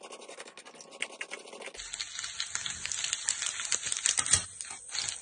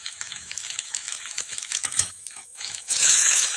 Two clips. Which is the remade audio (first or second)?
second